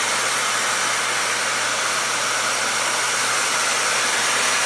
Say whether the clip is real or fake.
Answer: real